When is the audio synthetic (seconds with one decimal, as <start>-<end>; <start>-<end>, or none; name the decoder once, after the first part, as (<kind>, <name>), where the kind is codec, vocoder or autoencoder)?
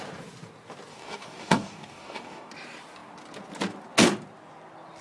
0.9-2.5 (codec, DAC)